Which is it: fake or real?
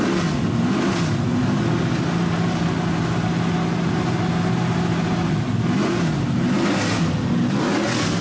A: real